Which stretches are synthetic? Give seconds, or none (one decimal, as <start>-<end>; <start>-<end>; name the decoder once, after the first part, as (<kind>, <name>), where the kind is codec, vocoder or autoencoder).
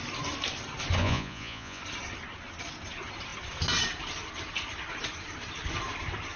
1.0-1.8 (vocoder, Vocos)